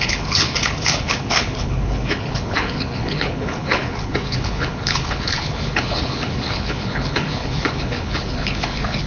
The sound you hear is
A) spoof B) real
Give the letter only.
A